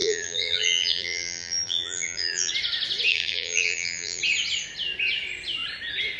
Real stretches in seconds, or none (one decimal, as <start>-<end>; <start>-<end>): 2.5-3.1; 4.2-6.2